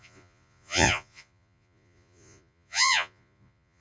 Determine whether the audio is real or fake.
fake